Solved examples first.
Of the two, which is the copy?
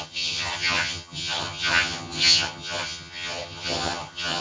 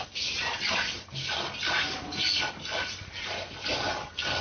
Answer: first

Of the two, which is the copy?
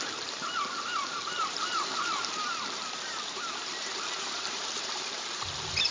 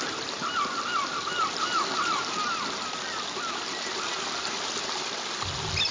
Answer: first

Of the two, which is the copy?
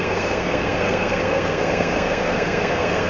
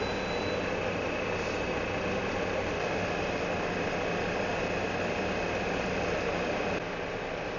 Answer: first